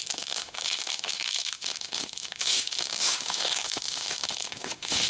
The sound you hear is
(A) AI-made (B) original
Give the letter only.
A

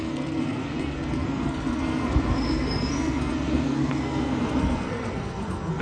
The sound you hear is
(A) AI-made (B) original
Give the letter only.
A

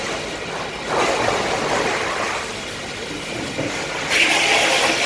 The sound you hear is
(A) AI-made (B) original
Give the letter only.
B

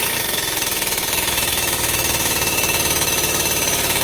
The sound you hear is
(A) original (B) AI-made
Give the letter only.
B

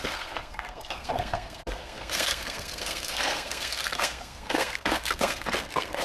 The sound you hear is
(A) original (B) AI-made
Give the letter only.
B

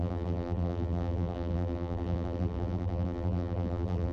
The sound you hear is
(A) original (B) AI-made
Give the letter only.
B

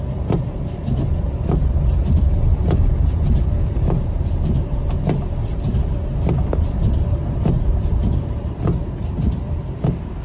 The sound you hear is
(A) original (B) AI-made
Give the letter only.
B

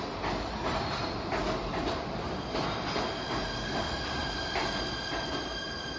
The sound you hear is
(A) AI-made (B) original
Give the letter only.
B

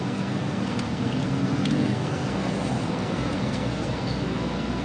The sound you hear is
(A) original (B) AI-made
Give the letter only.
B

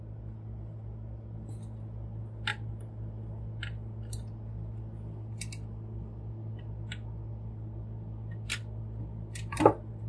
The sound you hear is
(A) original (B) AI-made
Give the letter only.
A